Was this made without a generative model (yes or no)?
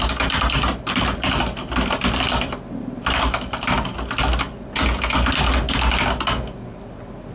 yes